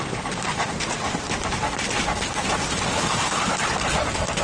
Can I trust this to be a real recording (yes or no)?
yes